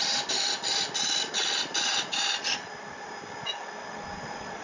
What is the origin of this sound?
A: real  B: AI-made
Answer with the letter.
A